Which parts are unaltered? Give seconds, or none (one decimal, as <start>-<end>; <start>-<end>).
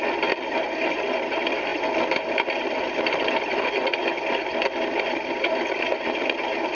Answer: 0.0-6.7